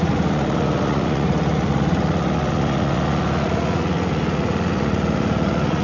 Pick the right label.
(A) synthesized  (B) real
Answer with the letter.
A